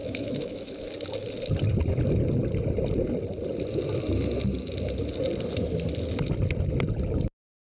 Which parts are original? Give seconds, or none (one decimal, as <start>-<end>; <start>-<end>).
0.7-7.6